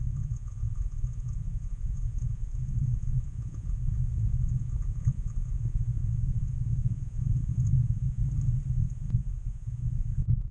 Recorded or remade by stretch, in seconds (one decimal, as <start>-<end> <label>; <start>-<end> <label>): 0.0-8.2 remade; 8.2-8.7 recorded; 8.7-10.5 remade